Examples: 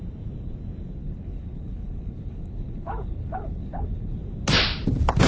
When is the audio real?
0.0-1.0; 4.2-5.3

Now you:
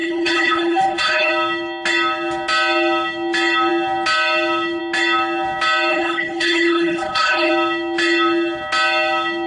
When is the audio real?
1.3-5.9; 7.5-9.5

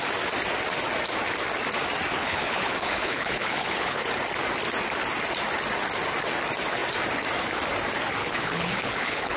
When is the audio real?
0.0-2.1; 4.0-8.2

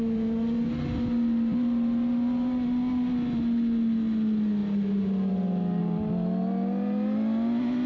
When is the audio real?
0.0-7.9

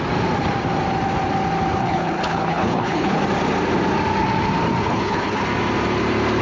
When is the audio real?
0.0-1.8; 3.2-4.8; 5.4-6.4

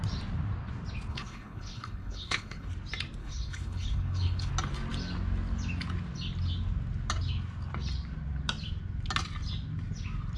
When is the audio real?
0.0-1.1; 2.7-3.2; 4.5-10.4